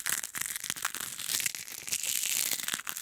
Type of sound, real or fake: real